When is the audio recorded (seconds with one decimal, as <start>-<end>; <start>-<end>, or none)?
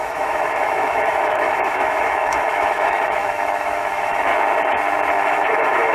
4.3-5.1